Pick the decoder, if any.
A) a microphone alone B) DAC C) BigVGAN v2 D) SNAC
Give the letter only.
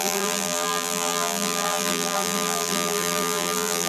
C